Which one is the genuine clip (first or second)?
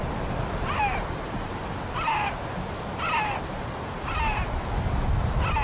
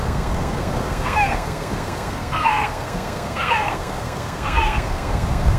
first